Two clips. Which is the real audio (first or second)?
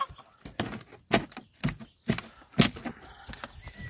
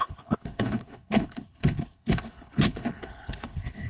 first